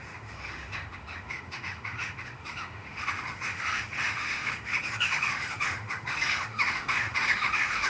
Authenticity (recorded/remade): remade